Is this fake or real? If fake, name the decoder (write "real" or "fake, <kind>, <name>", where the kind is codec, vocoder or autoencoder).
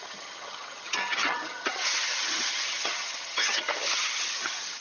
fake, vocoder, HiFi-GAN